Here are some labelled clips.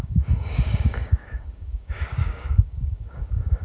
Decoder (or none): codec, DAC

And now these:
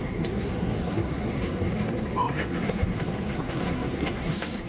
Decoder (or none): codec, SNAC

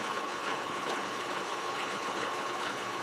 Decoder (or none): codec, HILCodec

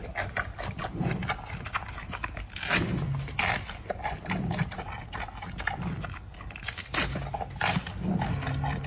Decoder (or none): none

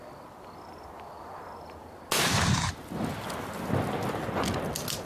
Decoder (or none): none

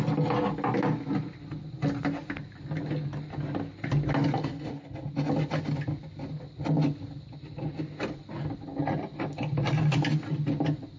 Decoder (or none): none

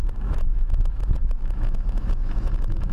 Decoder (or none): autoencoder, DAC-VAE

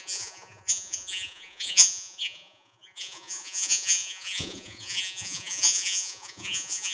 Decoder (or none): vocoder, Vocos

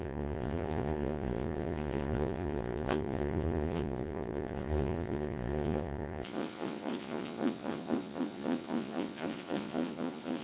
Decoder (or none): vocoder, Vocos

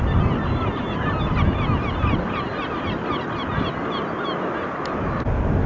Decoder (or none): none